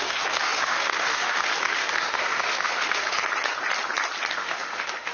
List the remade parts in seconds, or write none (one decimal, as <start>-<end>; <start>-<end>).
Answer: 0.0-3.2; 4.3-5.1